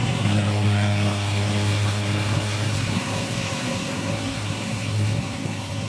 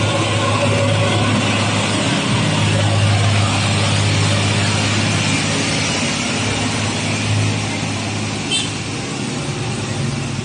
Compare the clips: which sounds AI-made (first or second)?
first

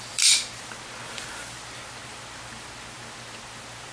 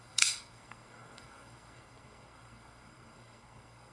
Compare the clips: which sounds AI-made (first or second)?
second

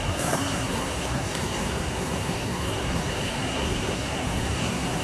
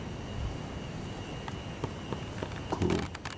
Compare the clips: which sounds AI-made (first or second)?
first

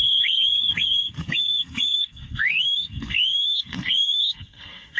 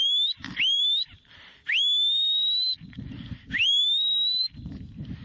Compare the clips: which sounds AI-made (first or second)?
first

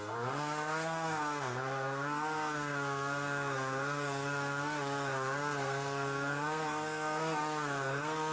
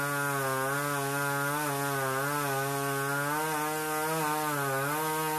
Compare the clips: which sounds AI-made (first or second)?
first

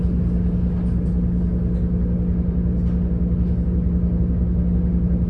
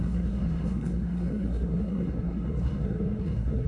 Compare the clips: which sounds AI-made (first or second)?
second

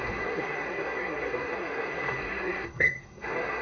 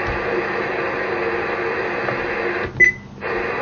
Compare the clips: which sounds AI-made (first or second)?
first